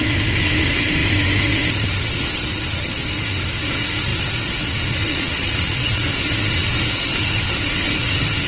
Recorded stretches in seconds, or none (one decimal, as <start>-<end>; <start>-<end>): 0.0-5.1; 6.1-8.5

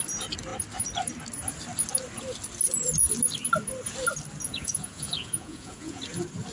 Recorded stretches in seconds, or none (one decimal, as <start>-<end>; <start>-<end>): 0.0-4.5; 6.0-6.5

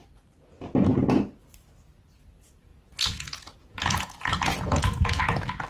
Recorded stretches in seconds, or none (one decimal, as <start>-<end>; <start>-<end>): 0.0-2.7; 5.2-5.7